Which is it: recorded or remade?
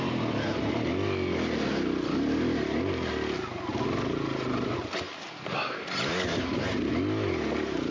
recorded